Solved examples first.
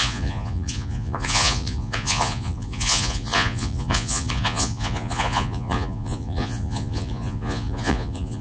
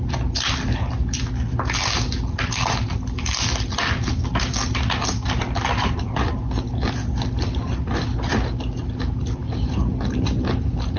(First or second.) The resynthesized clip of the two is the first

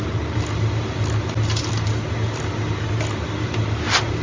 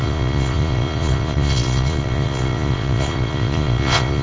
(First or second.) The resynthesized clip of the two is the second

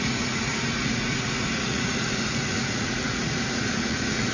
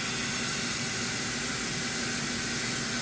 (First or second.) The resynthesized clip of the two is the first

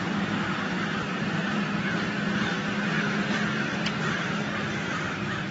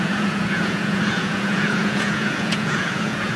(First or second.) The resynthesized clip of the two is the second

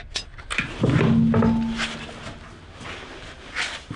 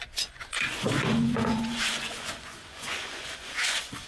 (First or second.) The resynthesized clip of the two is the second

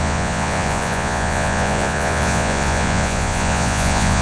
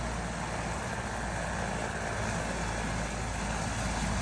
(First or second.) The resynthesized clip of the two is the first